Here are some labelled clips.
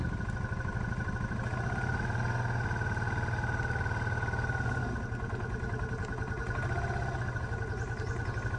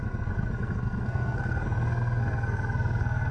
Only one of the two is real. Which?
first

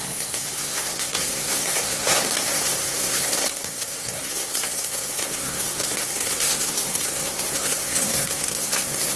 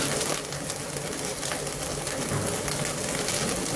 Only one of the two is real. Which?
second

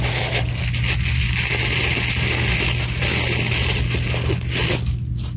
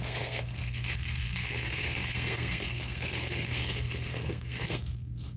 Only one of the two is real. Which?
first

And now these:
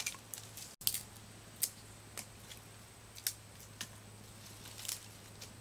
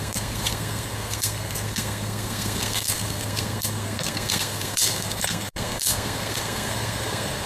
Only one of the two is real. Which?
first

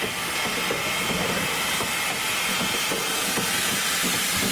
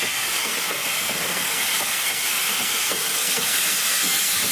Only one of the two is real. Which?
first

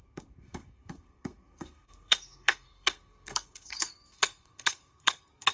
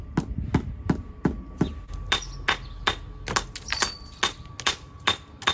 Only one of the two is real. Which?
second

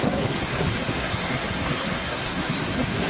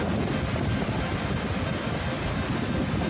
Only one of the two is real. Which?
second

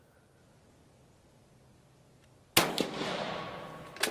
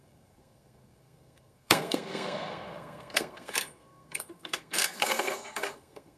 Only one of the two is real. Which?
first